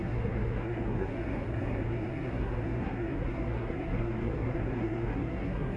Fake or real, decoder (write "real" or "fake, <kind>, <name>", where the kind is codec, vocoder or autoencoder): fake, codec, SNAC